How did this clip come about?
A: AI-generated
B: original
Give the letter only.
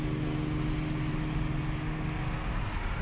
B